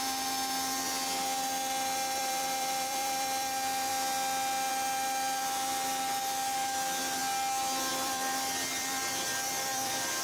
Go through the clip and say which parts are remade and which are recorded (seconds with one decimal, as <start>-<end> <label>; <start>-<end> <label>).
0.0-3.9 remade; 3.9-4.7 recorded; 4.7-7.2 remade; 7.2-7.9 recorded; 7.9-10.2 remade